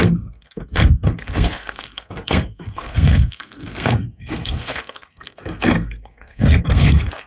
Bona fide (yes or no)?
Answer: no